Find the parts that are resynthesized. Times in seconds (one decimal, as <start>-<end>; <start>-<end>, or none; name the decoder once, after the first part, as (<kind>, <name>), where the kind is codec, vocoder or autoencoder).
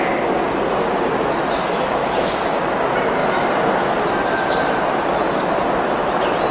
2.0-2.6 (autoencoder, DAC-VAE)